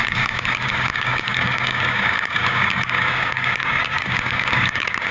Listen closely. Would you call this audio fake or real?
fake